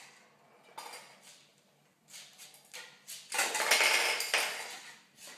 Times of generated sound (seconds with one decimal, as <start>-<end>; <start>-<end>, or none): none